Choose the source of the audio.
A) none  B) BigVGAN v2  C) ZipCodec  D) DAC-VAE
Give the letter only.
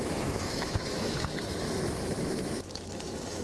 D